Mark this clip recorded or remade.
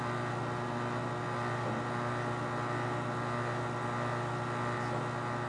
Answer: recorded